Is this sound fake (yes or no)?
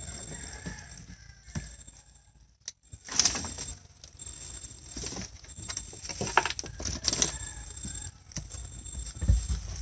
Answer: no